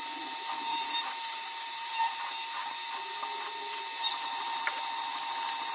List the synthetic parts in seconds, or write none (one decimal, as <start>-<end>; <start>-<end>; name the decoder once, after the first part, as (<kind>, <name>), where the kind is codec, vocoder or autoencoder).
0.7-2.9 (vocoder, BigVGAN v2); 3.9-4.6